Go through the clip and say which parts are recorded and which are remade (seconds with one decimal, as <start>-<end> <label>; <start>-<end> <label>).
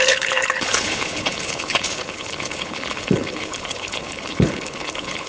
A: 0.0-5.3 remade